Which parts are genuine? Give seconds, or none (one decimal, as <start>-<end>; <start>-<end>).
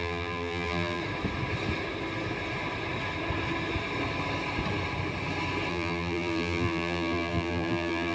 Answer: 1.0-5.7